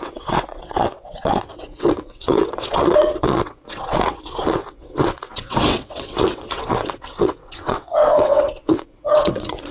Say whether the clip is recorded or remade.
remade